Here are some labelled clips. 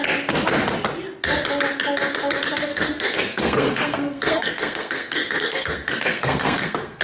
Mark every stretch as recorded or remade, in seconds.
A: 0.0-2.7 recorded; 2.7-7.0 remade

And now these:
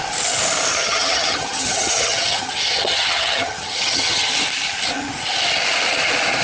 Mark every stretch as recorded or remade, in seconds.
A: 0.0-0.7 recorded; 0.7-4.3 remade; 4.3-6.4 recorded